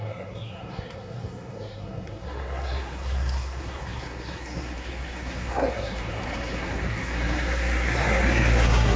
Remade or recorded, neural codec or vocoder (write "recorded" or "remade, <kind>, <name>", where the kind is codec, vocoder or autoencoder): remade, codec, SNAC